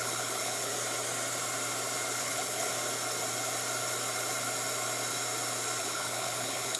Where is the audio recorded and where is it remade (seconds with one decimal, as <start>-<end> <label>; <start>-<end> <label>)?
0.0-0.7 remade; 0.7-2.2 recorded; 2.2-2.7 remade; 2.7-5.8 recorded; 5.8-6.8 remade